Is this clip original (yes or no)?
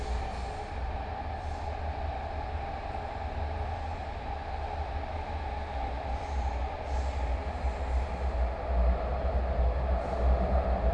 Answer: yes